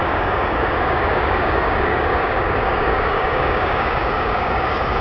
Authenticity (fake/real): fake